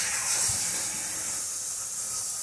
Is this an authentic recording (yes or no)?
yes